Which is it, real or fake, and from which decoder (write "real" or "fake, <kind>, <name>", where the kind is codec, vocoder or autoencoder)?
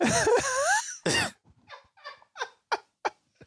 real